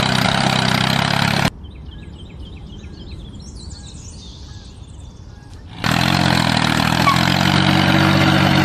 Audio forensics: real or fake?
real